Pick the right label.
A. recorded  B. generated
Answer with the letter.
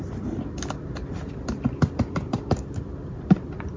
A